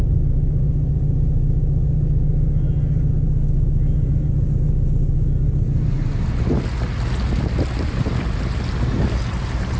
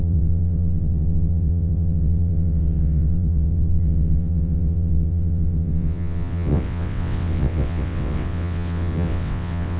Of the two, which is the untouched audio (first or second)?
first